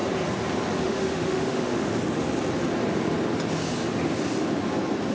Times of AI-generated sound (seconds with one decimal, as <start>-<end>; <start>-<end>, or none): 0.8-1.9